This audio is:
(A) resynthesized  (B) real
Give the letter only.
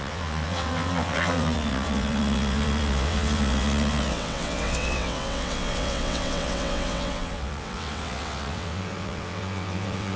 A